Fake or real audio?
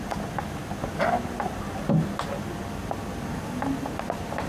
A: real